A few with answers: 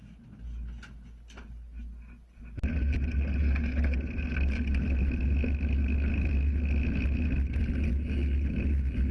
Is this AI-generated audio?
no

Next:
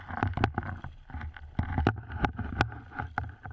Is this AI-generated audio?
no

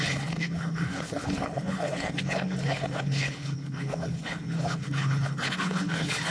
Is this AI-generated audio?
yes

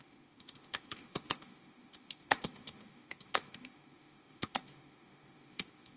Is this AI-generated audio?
yes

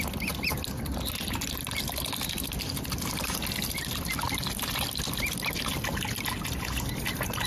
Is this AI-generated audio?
no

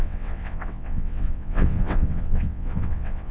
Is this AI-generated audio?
yes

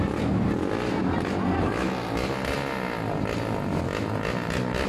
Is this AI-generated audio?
no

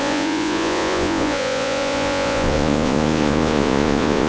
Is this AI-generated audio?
yes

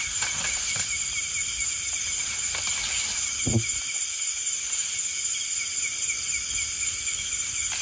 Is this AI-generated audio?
no